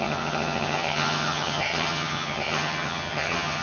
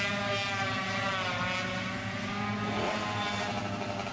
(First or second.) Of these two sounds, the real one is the second